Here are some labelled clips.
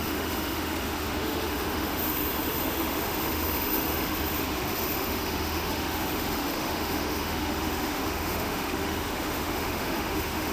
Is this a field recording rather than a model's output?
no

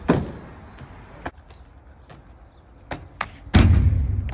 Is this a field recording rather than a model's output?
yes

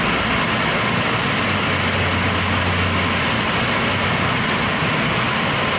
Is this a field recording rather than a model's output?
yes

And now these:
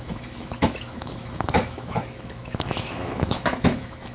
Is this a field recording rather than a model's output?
no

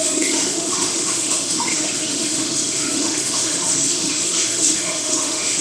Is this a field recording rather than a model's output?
no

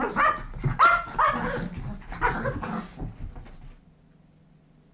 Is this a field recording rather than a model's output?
yes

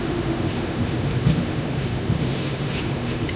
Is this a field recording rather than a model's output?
no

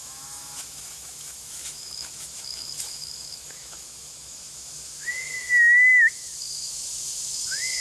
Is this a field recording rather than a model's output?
no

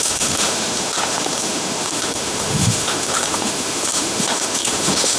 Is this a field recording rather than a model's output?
no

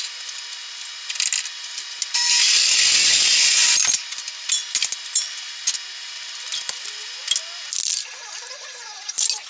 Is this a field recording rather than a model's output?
yes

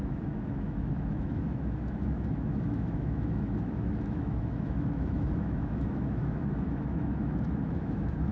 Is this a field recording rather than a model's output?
no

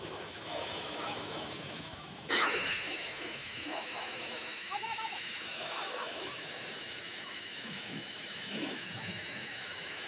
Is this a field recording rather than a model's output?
no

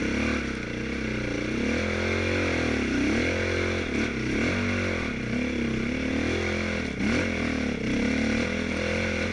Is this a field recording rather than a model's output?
yes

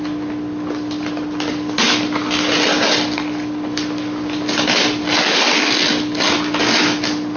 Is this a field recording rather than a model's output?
yes